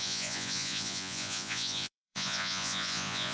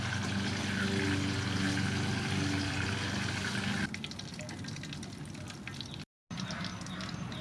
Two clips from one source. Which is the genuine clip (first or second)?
second